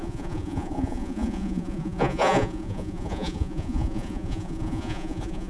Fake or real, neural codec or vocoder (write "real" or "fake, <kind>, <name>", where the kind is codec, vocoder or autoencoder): fake, vocoder, Vocos